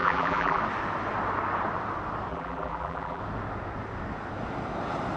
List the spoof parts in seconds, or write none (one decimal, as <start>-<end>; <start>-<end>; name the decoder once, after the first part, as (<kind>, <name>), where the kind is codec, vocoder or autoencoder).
0.0-0.6 (vocoder, BigVGAN v2); 2.3-3.2